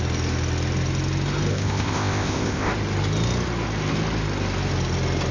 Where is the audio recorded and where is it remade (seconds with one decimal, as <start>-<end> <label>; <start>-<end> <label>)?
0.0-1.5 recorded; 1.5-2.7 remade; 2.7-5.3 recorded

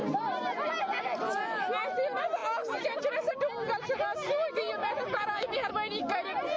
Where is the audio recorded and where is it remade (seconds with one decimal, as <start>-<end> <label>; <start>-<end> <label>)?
0.0-4.8 recorded; 4.8-5.7 remade; 5.7-6.6 recorded

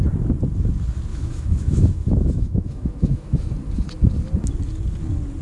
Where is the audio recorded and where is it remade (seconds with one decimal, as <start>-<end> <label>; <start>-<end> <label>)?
0.0-1.1 recorded; 1.1-3.5 remade; 3.5-5.4 recorded

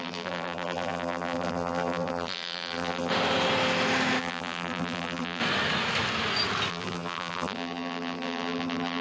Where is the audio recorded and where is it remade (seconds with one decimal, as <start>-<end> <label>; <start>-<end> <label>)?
0.0-3.1 remade; 3.1-4.2 recorded; 4.2-5.4 remade; 5.4-6.7 recorded; 6.7-9.0 remade

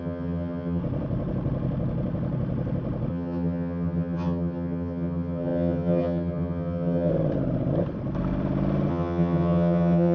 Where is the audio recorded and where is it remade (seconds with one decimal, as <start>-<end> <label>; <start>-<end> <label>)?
0.0-0.8 remade; 0.8-3.1 recorded; 3.1-7.1 remade; 7.1-8.9 recorded; 8.9-10.1 remade

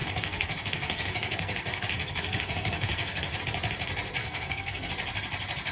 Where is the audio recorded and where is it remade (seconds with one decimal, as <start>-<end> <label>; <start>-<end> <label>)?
0.0-3.4 remade; 3.4-4.2 recorded; 4.2-4.9 remade; 4.9-5.7 recorded

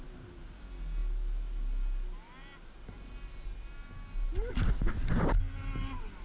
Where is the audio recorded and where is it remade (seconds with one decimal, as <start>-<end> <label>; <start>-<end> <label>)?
0.0-6.2 recorded

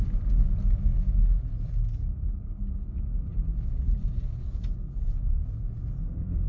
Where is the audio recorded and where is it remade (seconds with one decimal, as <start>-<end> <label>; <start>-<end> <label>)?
0.0-0.9 recorded; 0.9-1.7 remade; 1.7-3.3 recorded; 3.3-6.5 remade